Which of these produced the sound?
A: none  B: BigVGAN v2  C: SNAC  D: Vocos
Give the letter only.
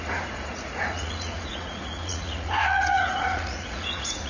D